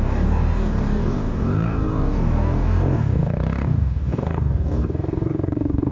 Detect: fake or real fake